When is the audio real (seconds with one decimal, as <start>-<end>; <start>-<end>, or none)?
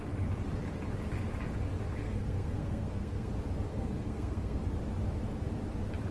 0.0-2.0; 3.3-3.7; 4.6-6.1